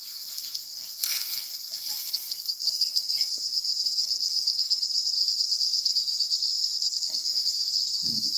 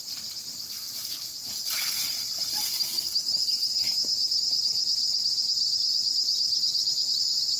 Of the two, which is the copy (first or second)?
first